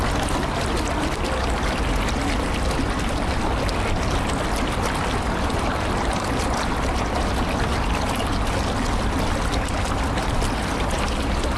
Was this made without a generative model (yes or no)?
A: yes